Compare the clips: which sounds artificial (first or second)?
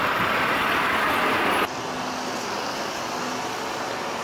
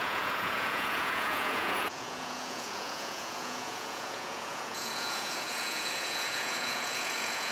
second